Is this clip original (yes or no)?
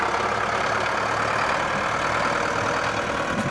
yes